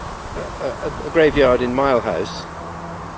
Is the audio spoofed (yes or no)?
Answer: no